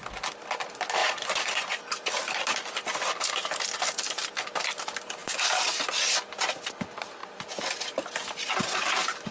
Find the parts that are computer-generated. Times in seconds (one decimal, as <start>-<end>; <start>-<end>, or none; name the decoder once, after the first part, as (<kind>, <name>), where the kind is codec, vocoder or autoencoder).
1.0-1.8 (vocoder, Vocos)